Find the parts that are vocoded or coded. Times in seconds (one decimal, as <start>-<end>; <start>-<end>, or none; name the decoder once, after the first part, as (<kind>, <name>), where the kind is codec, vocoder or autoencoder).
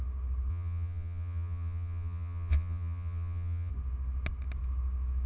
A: 0.5-3.7 (vocoder, Vocos)